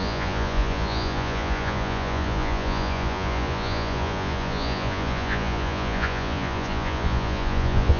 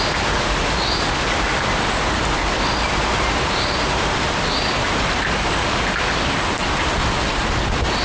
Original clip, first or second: second